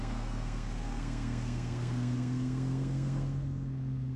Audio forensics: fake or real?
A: fake